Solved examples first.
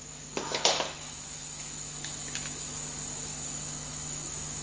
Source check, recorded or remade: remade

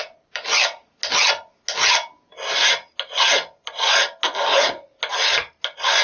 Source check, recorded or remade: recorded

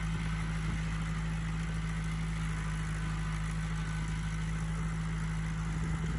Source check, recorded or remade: recorded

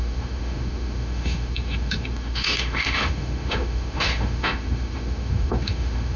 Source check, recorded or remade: remade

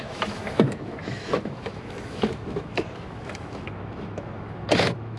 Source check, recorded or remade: remade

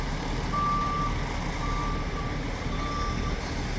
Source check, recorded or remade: recorded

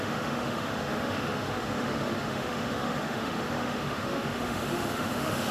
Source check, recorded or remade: remade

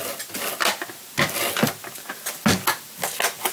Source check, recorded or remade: recorded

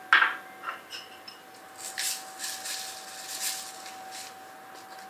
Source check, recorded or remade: recorded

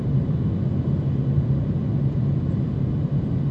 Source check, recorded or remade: recorded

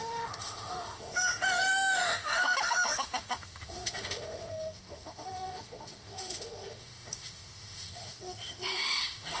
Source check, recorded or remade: remade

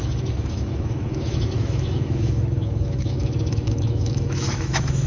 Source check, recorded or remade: remade